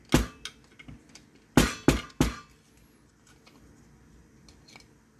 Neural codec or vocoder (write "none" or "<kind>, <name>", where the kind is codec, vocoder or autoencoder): none